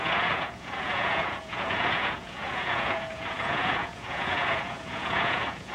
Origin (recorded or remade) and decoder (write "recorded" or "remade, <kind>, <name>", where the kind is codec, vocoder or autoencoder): remade, vocoder, Vocos